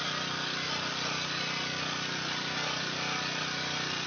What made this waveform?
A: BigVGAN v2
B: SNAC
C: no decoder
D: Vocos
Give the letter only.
C